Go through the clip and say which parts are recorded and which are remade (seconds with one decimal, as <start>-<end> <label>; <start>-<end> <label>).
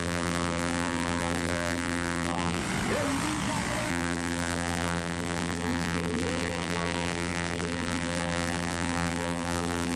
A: 0.0-2.6 remade; 2.6-3.9 recorded; 3.9-10.0 remade